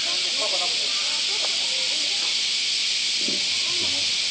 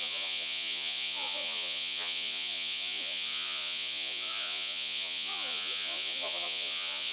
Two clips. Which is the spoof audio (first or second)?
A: second